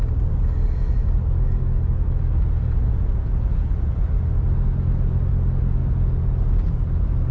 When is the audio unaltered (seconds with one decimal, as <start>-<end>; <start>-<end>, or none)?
0.0-2.3; 4.2-7.3